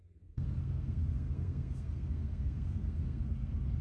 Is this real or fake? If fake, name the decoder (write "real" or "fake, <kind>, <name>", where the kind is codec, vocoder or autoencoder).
fake, codec, SNAC